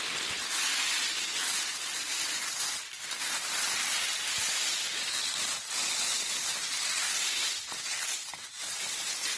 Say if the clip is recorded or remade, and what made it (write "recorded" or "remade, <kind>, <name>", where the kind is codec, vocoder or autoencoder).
recorded